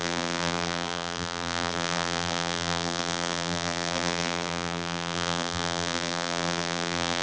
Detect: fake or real fake